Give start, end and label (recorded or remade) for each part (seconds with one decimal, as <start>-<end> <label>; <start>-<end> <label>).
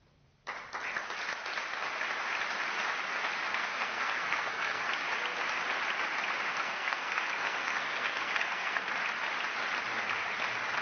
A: 0.0-3.5 recorded; 3.5-4.9 remade; 4.9-6.5 recorded; 6.5-8.9 remade; 8.9-10.8 recorded